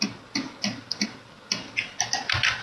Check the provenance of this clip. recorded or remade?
recorded